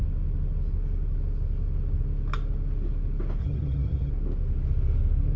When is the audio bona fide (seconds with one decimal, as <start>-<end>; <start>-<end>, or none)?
0.0-3.4; 4.1-5.4